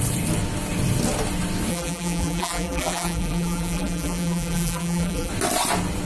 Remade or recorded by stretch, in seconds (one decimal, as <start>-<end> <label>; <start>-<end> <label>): 0.0-1.7 recorded; 1.7-5.3 remade; 5.3-6.0 recorded